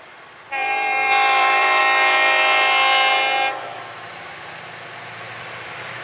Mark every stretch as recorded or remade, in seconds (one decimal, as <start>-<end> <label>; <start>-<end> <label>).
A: 0.0-1.8 remade; 1.8-5.4 recorded; 5.4-6.0 remade